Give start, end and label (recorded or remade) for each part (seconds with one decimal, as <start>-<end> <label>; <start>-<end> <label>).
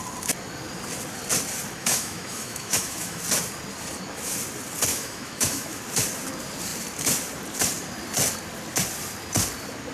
0.0-1.8 recorded; 1.8-3.2 remade; 3.2-4.9 recorded; 4.9-5.8 remade; 5.8-9.9 recorded